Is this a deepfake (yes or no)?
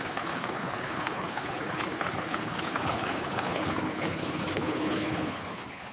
yes